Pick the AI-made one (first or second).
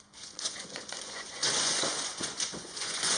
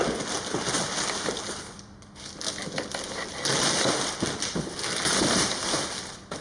first